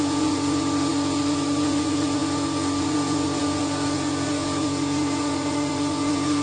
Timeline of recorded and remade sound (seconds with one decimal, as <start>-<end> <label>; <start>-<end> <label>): 0.0-6.4 remade